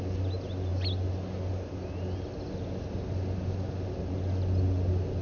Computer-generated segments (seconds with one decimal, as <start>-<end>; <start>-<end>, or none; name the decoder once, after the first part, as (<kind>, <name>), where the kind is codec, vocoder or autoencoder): none